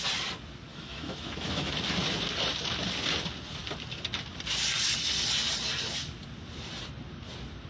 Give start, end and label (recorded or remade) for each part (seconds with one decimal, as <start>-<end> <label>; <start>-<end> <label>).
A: 0.0-0.7 recorded; 0.7-1.7 remade; 1.7-7.7 recorded